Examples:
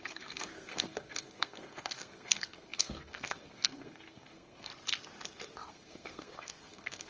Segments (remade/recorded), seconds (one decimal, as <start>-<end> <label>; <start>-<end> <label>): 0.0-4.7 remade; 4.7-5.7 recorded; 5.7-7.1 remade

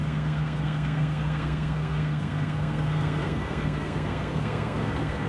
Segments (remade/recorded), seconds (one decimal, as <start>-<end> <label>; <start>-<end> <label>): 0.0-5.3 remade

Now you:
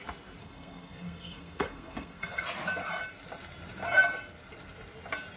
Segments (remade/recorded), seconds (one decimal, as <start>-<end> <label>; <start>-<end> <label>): 0.0-0.4 recorded; 0.4-2.4 remade; 2.4-5.4 recorded

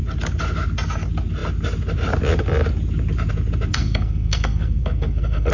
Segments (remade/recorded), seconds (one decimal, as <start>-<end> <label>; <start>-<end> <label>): 0.0-3.7 recorded; 3.7-5.5 remade

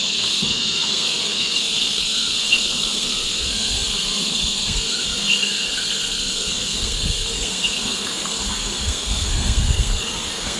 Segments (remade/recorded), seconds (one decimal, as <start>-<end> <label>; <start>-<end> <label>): 0.0-10.6 remade

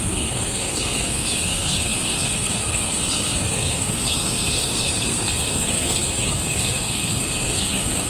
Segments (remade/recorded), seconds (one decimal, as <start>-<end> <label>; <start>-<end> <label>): 0.0-8.1 remade

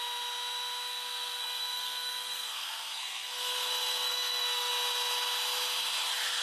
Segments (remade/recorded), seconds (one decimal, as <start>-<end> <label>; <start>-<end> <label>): 0.0-0.9 recorded; 0.9-4.7 remade; 4.7-6.4 recorded

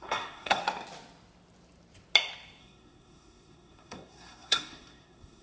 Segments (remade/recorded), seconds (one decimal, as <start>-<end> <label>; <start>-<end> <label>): 0.0-0.6 remade; 0.6-2.6 recorded; 2.6-5.4 remade